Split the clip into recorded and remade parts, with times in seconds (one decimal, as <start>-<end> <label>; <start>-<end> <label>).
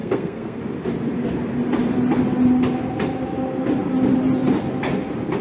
0.0-0.6 remade; 0.6-5.4 recorded